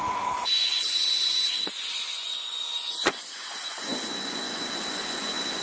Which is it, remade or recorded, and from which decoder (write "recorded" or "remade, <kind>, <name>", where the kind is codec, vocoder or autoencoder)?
remade, vocoder, Vocos